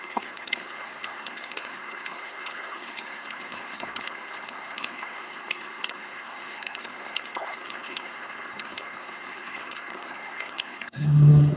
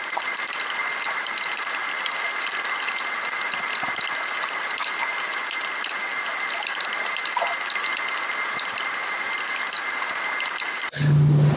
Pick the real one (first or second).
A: second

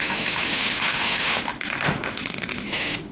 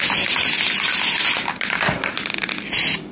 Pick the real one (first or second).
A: second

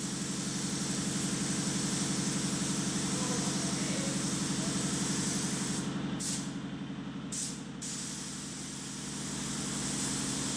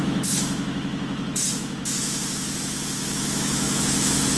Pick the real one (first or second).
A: first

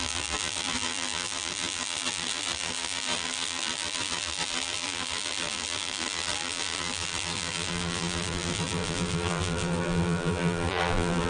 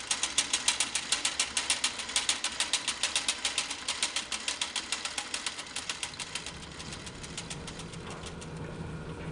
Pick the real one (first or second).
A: second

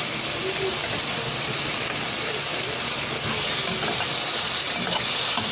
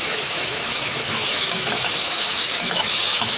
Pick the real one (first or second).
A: first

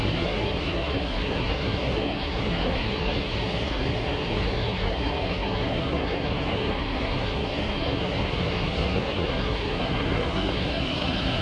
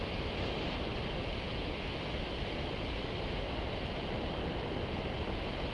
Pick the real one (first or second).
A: second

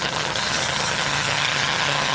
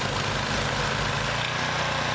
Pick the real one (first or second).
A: second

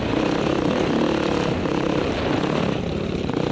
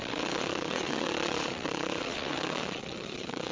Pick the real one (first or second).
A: first